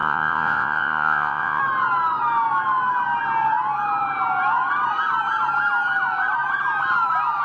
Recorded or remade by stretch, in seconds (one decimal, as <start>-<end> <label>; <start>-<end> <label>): 0.0-1.6 remade; 1.6-7.4 recorded